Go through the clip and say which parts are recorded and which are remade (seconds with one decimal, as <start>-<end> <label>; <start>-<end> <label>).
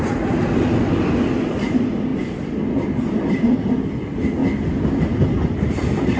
0.0-6.2 recorded